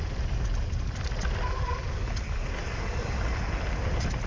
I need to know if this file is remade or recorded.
recorded